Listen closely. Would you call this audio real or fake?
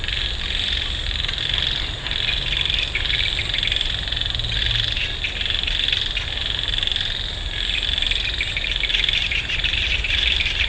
real